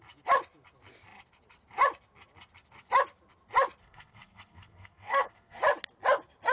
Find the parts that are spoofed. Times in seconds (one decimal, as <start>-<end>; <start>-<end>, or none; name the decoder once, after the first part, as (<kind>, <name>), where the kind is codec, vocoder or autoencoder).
3.8-5.6 (codec, SNAC)